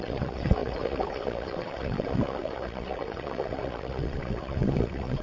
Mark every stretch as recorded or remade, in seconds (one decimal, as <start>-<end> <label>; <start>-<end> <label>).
0.0-5.2 remade